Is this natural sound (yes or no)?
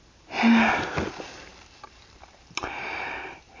yes